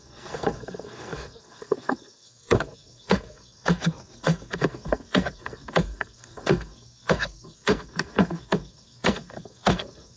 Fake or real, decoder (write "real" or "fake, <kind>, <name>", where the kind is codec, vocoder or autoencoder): fake, codec, SNAC